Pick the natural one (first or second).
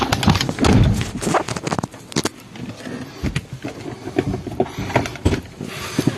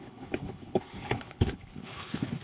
first